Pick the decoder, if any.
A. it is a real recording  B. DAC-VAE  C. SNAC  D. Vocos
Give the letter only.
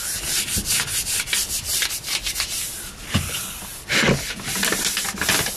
A